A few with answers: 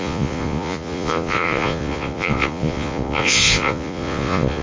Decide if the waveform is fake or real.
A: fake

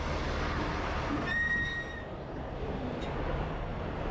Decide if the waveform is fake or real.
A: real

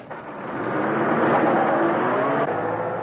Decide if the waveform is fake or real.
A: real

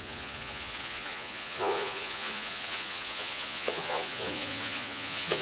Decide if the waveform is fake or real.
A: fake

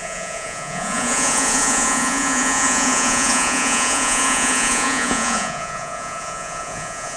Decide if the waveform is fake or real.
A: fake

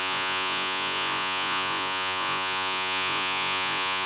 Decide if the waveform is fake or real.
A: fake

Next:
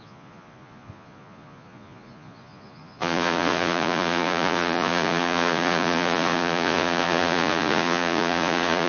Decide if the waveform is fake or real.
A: fake